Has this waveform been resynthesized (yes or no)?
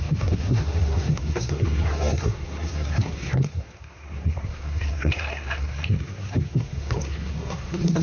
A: yes